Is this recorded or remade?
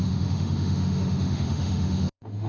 remade